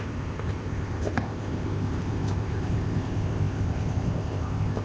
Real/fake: fake